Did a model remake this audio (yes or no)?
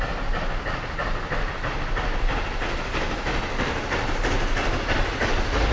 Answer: no